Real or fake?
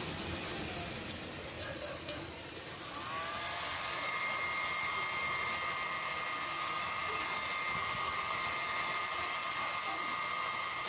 real